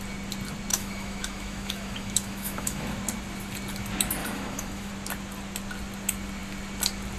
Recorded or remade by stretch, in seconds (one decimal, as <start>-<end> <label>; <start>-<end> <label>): 0.0-0.7 recorded; 0.7-2.9 remade; 2.9-4.2 recorded; 4.2-4.9 remade; 4.9-7.2 recorded